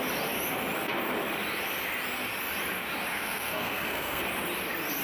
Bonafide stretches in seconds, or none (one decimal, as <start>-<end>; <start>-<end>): 0.0-3.1; 4.2-5.0